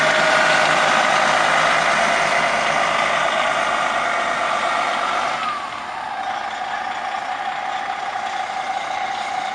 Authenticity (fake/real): real